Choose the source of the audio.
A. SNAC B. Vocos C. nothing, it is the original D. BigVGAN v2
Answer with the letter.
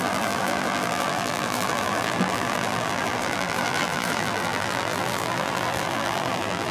D